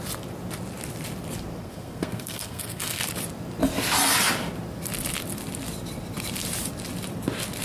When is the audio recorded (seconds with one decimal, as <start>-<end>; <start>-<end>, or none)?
0.0-1.6; 3.0-7.6

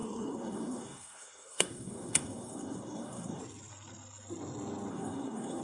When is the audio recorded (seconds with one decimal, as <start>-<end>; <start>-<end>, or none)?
3.4-4.9

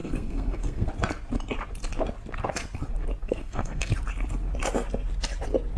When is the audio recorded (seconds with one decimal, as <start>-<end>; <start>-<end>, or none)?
0.9-3.2; 3.9-5.8